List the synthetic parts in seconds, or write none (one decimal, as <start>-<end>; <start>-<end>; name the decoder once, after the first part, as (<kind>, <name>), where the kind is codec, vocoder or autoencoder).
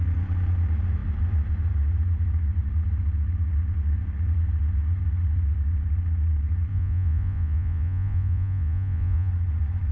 6.7-9.3 (vocoder, Vocos)